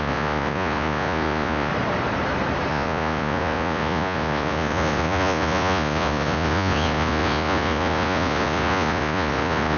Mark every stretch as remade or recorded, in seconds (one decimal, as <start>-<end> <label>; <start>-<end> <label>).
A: 0.0-1.7 remade; 1.7-2.7 recorded; 2.7-9.8 remade

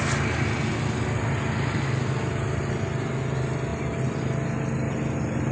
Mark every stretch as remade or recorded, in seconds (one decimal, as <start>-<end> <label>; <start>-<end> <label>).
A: 0.0-5.5 recorded

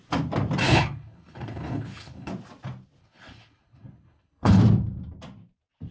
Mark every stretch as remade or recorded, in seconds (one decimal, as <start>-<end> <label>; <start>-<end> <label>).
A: 0.0-0.6 recorded; 0.6-2.3 remade; 2.3-3.0 recorded; 3.0-4.6 remade; 4.6-5.9 recorded

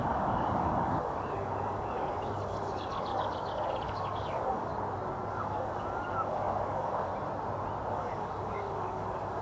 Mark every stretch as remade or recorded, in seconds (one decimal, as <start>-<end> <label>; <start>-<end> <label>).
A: 0.0-4.7 remade; 4.7-5.3 recorded; 5.3-7.1 remade; 7.1-7.9 recorded; 7.9-9.4 remade

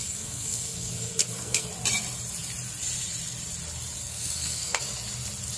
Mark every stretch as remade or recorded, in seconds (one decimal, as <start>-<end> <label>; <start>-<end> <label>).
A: 0.0-1.7 remade; 1.7-4.0 recorded; 4.0-4.8 remade; 4.8-5.6 recorded

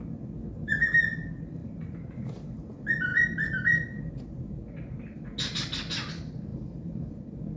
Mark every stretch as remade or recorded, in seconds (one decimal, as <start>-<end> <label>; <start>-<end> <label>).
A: 0.0-1.6 recorded; 1.6-2.7 remade; 2.7-6.5 recorded; 6.5-7.6 remade